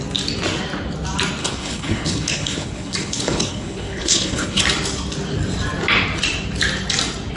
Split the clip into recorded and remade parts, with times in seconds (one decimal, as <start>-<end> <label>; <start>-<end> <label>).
0.0-1.4 recorded; 1.4-4.6 remade; 4.6-7.4 recorded